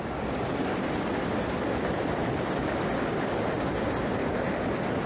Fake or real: real